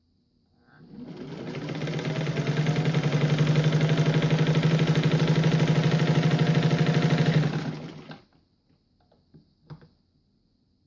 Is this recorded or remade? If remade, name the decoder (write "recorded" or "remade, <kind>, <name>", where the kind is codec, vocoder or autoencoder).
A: recorded